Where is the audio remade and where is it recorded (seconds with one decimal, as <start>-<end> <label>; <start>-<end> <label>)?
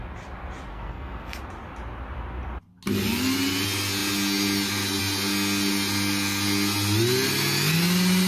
0.0-0.7 recorded; 0.7-1.4 remade; 1.4-8.3 recorded